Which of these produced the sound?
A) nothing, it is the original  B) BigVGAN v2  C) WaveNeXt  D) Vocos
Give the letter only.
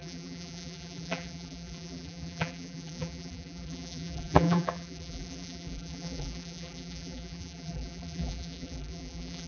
B